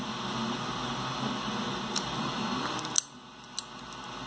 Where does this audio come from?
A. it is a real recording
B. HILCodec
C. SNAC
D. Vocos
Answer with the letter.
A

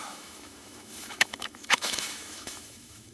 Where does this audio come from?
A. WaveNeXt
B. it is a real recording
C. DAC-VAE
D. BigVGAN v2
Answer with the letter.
C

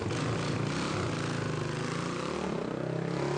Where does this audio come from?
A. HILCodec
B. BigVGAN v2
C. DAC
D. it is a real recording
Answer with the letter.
D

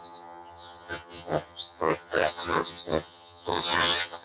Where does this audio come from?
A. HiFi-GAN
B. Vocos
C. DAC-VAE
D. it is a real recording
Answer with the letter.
A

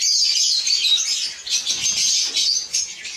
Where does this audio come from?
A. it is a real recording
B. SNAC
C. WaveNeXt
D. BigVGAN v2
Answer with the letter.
A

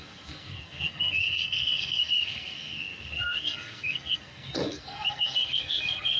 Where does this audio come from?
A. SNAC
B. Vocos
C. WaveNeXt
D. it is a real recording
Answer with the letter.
A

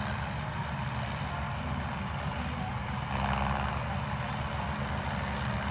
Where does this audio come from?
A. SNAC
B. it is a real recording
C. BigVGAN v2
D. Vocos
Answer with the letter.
B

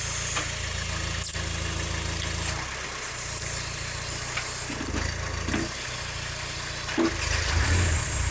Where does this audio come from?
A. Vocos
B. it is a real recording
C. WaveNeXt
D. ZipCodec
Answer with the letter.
B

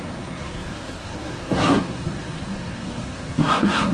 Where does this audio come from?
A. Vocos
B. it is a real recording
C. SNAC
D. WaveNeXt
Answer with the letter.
C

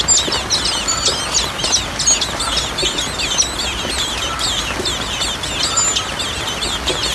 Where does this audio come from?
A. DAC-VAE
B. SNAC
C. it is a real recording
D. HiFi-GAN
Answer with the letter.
C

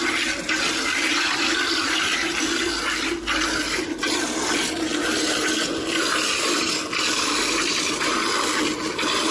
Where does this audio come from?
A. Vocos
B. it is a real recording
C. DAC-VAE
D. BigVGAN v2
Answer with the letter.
B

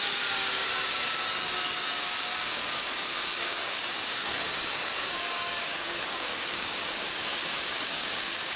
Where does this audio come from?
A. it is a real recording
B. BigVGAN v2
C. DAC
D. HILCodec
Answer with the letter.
C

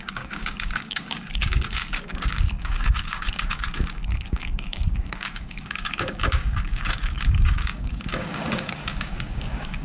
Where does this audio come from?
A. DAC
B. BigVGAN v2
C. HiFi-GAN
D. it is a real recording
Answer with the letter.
A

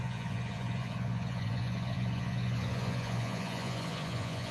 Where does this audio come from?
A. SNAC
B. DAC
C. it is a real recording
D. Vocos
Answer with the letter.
D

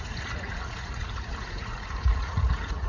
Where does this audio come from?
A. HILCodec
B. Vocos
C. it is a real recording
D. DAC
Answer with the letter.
B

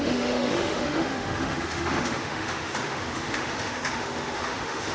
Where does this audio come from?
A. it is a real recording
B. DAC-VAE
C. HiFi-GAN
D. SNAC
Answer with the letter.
B